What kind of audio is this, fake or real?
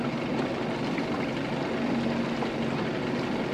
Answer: real